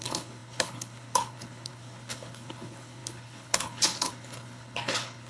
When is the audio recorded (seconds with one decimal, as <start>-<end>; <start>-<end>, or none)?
none